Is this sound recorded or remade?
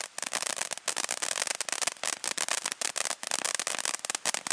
recorded